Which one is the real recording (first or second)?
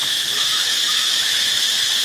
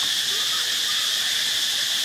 second